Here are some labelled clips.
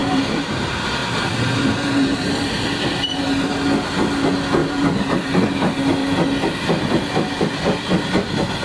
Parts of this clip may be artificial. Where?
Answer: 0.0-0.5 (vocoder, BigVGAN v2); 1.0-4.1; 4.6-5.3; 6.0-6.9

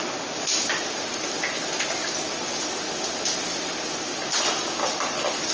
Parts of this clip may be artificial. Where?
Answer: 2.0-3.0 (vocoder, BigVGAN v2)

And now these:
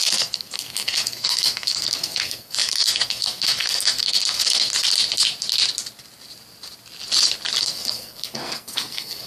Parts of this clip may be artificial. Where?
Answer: 0.0-4.7 (codec, SNAC); 7.6-9.3

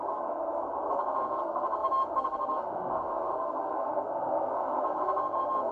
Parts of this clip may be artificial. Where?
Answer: 0.0-5.7 (codec, SNAC)